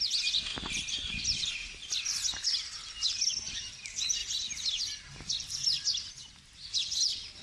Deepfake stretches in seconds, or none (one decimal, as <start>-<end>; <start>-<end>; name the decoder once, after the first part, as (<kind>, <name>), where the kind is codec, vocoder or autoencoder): 0.5-1.9 (vocoder, BigVGAN v2); 6.2-6.9

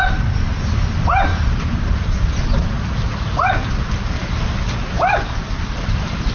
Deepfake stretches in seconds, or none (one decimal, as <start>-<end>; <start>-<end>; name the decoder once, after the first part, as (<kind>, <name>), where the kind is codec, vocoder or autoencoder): 1.3-2.9 (vocoder, BigVGAN v2); 4.2-4.8

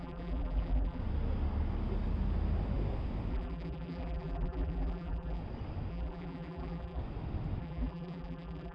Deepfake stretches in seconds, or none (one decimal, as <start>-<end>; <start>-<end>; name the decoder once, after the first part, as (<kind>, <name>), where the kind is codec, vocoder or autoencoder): 0.0-1.0 (vocoder, BigVGAN v2); 3.3-5.4; 5.9-7.0; 7.6-8.7

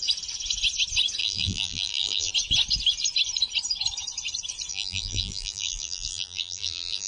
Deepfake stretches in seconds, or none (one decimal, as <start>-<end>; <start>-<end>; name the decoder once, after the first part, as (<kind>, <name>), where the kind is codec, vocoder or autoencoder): 1.2-2.3 (vocoder, BigVGAN v2); 4.7-7.1

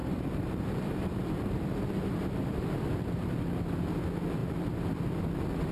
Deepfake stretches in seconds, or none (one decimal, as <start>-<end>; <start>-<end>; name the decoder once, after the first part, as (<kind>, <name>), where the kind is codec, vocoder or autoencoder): 0.0-3.3 (vocoder, BigVGAN v2)